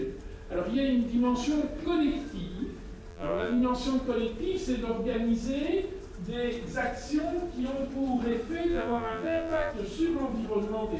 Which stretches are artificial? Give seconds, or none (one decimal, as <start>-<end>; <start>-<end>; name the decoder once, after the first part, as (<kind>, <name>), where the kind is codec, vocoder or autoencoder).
3.1-3.6 (vocoder, BigVGAN v2); 8.7-9.7